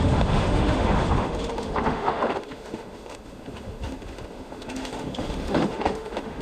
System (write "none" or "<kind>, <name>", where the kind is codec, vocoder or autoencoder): autoencoder, DAC-VAE